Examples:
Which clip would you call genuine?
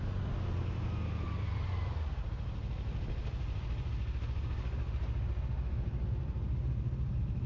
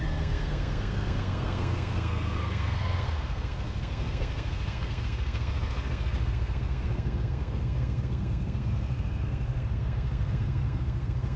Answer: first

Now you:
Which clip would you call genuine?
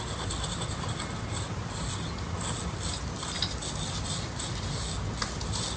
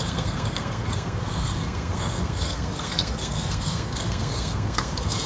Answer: first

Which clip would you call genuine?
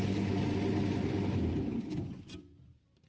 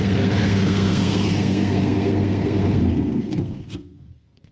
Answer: first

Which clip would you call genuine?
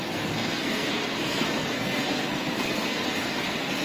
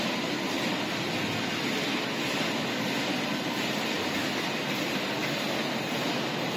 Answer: second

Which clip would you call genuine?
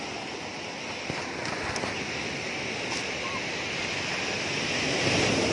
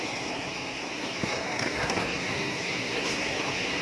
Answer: first